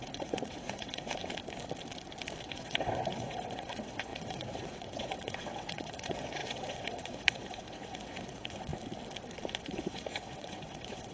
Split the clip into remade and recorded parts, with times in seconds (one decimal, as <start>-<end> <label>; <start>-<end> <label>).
0.0-1.2 remade; 1.2-2.4 recorded; 2.4-8.7 remade; 8.7-9.6 recorded; 9.6-11.1 remade